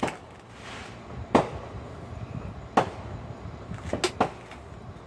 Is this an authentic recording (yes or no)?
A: yes